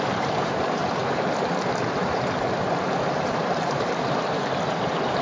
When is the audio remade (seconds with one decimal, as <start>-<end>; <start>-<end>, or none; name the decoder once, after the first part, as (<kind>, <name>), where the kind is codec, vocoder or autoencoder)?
0.0-5.2 (vocoder, BigVGAN v2)

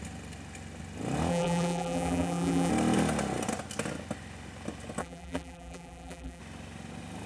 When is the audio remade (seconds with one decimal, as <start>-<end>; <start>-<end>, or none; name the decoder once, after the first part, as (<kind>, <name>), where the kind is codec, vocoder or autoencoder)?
1.3-2.7 (vocoder, BigVGAN v2); 5.0-6.4

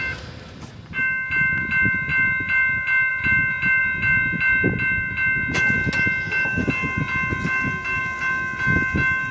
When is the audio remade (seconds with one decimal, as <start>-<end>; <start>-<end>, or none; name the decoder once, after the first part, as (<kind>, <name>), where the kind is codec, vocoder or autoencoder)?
none

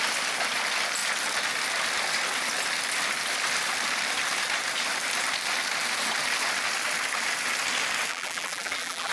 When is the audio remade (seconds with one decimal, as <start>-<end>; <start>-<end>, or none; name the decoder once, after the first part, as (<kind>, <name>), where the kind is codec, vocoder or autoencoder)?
8.1-9.1 (vocoder, BigVGAN v2)

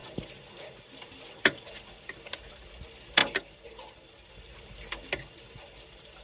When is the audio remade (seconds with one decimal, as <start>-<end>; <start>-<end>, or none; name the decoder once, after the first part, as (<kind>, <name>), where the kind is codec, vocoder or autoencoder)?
none

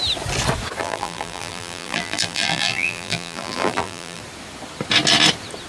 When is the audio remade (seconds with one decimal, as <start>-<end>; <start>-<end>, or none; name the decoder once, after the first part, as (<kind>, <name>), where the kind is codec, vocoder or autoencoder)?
0.8-4.2 (vocoder, BigVGAN v2)

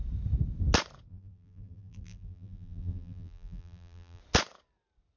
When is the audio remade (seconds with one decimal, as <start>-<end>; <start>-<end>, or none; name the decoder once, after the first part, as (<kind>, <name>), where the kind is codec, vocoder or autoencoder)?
1.1-4.2 (vocoder, BigVGAN v2)

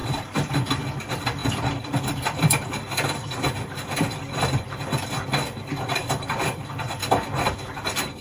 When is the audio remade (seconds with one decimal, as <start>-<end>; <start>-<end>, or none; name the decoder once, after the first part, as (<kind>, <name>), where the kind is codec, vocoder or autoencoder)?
0.0-0.8 (vocoder, BigVGAN v2); 1.4-5.1; 6.0-7.4